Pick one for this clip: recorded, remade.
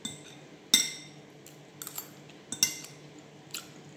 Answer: recorded